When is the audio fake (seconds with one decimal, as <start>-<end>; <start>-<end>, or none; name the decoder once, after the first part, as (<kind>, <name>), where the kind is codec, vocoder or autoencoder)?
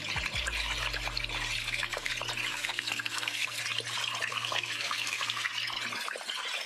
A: 1.6-2.1 (codec, SNAC); 2.5-3.6; 4.3-5.5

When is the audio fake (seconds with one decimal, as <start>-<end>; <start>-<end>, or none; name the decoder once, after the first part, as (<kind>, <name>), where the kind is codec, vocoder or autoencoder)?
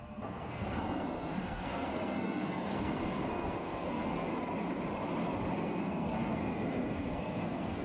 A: 0.0-4.3 (codec, SNAC); 5.5-7.8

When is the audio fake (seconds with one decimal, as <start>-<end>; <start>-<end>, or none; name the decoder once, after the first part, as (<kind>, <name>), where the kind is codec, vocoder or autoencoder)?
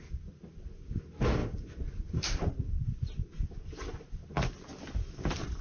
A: none